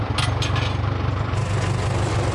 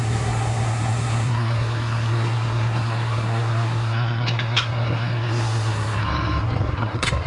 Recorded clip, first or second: first